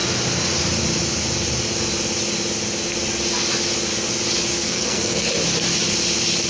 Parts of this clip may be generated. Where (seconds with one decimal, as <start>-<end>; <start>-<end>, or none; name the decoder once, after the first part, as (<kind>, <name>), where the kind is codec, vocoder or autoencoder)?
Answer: 4.5-5.3 (codec, SNAC)